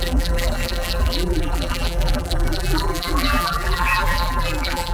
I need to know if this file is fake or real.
fake